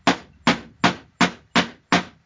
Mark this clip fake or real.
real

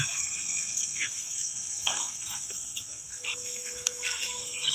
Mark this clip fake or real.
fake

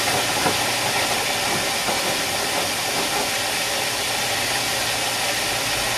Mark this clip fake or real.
real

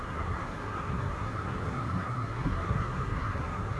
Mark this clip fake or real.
fake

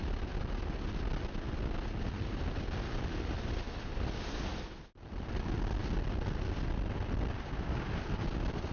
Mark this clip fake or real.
real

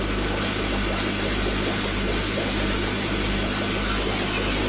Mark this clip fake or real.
real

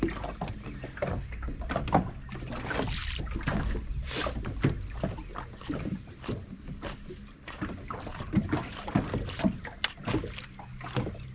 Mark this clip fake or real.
real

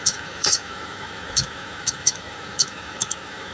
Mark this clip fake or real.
fake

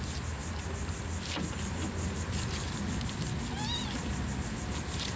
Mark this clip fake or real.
real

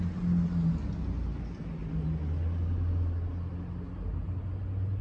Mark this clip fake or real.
real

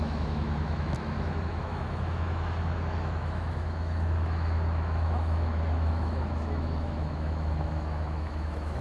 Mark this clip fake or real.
fake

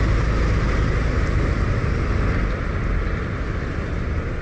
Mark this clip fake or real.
real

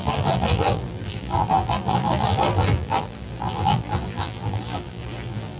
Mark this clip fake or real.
fake